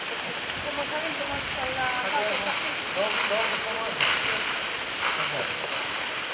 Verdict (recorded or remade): remade